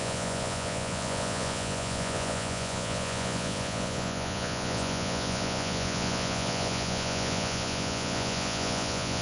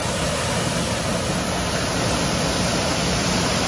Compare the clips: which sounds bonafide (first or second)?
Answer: second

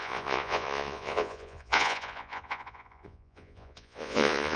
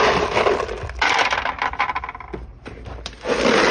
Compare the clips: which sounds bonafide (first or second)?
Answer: second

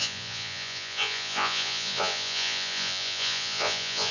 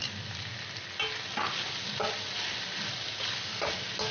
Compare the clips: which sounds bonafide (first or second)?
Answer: second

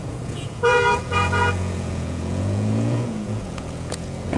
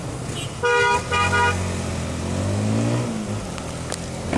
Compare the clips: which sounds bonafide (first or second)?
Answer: second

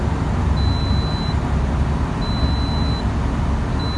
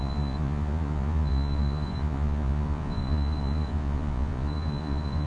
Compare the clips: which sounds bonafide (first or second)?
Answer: first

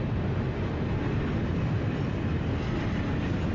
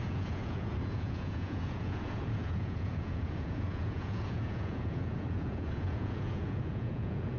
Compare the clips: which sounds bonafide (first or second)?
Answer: first